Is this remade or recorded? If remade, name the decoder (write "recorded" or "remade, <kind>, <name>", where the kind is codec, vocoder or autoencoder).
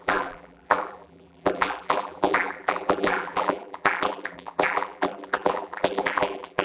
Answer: remade, vocoder, BigVGAN v2